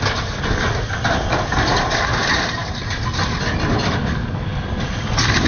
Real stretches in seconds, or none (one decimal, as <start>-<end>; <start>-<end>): 0.0-4.0; 4.5-5.5